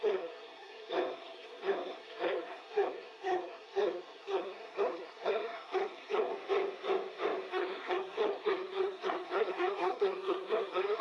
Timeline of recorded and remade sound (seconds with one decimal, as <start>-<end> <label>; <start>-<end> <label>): 0.0-6.3 remade; 6.3-7.5 recorded; 7.5-11.0 remade